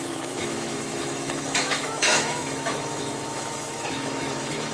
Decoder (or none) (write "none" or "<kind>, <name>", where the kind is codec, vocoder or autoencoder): autoencoder, DAC-VAE